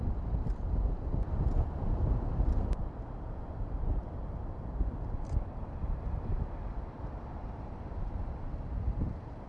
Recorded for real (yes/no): no